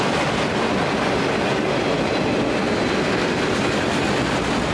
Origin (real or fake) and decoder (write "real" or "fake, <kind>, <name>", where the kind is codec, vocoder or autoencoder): real